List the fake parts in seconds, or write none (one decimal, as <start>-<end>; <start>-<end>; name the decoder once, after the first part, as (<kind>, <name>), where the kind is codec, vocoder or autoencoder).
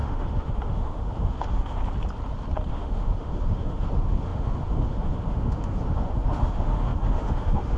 0.0-1.8 (autoencoder, DAC-VAE); 2.7-7.8